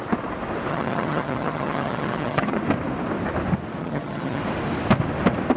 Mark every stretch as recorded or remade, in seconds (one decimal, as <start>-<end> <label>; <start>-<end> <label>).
0.0-0.7 recorded; 0.7-2.6 remade; 2.6-3.8 recorded; 3.8-4.4 remade; 4.4-5.6 recorded